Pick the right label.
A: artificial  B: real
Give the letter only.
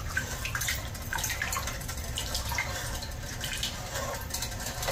A